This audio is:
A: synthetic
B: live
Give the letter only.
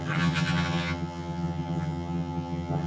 A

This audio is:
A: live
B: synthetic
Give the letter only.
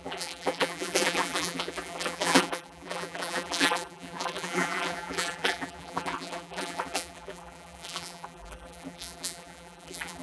B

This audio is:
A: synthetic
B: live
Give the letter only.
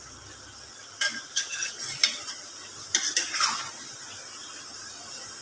B